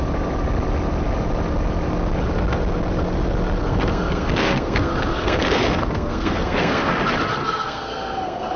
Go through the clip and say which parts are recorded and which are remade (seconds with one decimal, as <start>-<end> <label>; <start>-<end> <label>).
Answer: 0.0-3.6 recorded; 3.6-6.9 remade; 6.9-7.4 recorded; 7.4-8.6 remade